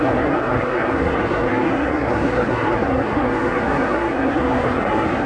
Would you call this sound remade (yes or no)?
yes